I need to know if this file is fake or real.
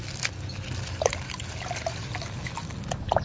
real